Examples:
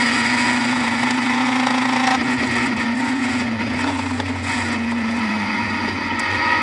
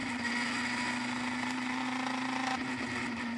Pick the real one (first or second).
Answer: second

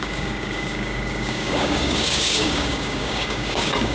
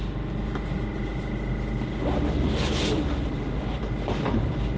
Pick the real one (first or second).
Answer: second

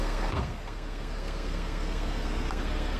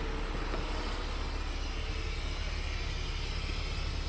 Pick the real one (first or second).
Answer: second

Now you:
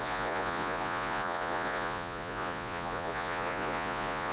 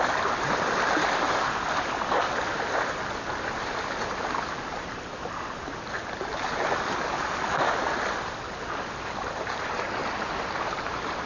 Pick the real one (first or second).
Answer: second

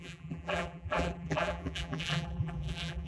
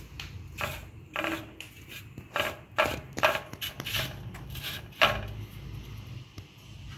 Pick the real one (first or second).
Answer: second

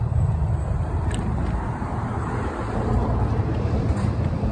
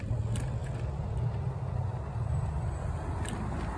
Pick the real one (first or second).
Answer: second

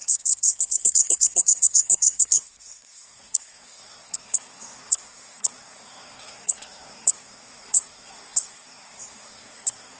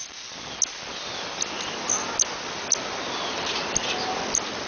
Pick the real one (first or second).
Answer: second